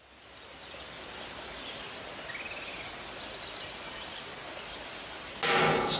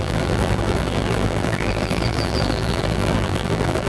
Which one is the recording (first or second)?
first